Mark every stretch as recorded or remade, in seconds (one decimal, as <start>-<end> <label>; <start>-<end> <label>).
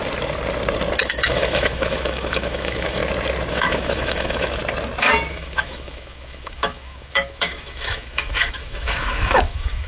0.0-1.0 recorded; 1.0-3.0 remade; 3.0-3.5 recorded; 3.5-4.6 remade; 4.6-5.3 recorded; 5.3-9.9 remade